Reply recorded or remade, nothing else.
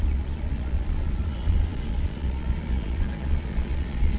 remade